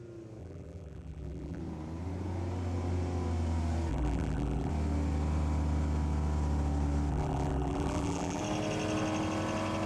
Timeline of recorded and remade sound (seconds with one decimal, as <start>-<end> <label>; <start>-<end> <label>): 0.0-0.4 recorded; 0.4-1.6 remade; 1.6-3.9 recorded; 3.9-4.7 remade; 4.7-7.1 recorded; 7.1-8.4 remade; 8.4-9.9 recorded